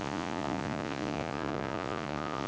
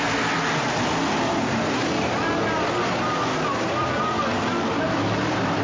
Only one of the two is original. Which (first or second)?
second